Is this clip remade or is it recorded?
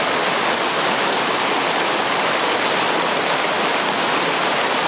recorded